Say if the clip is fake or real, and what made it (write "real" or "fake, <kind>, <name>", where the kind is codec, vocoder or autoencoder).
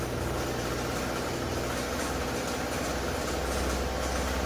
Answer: real